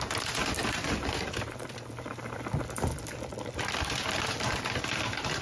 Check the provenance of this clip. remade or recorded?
remade